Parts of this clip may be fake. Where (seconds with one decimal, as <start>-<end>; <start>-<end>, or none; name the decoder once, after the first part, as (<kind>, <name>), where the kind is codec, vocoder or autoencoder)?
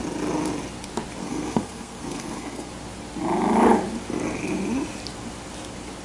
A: 1.2-2.7 (codec, SNAC)